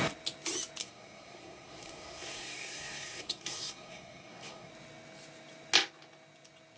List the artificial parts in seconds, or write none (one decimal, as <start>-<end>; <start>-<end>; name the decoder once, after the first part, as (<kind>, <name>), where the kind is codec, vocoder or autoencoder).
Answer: 0.8-4.7 (codec, SNAC)